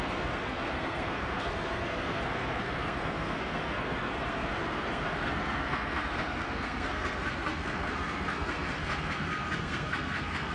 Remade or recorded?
remade